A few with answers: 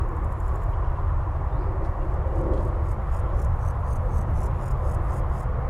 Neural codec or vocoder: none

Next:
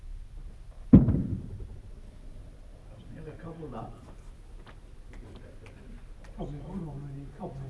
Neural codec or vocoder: none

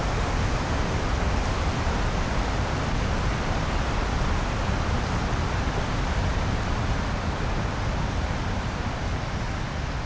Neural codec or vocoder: none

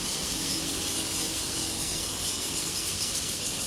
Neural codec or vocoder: codec, SNAC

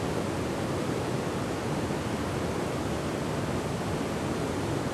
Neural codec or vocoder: none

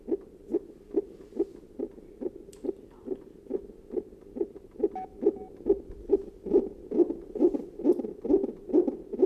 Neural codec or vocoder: none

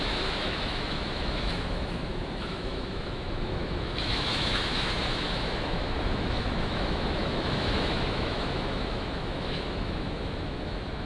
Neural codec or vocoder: autoencoder, DAC-VAE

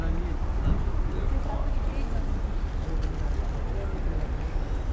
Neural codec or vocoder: none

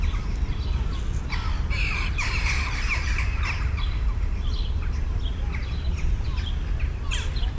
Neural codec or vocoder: none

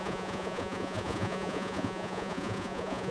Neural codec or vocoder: vocoder, Vocos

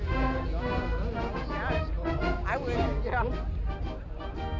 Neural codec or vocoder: none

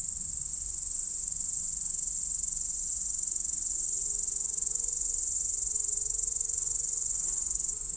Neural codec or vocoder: vocoder, Vocos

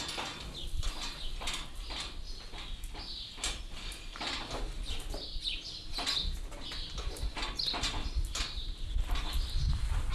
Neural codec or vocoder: none